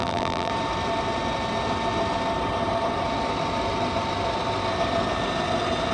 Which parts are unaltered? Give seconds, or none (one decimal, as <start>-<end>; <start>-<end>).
0.5-5.9